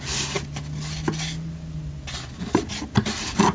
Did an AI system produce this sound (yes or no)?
no